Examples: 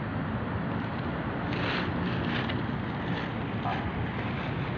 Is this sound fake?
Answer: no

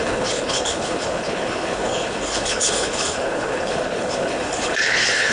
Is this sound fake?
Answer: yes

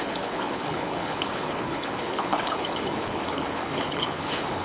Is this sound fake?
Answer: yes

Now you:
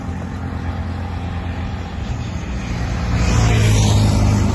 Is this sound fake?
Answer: no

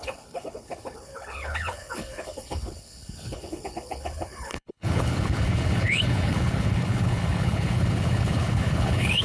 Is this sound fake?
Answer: yes